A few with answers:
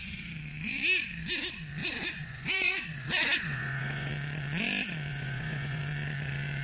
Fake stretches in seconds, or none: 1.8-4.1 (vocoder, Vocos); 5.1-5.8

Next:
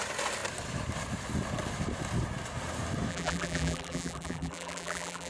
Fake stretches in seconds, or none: 3.1-5.3 (vocoder, BigVGAN v2)